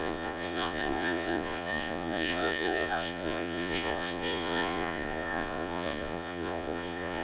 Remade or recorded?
remade